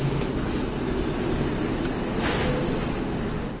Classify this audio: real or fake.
real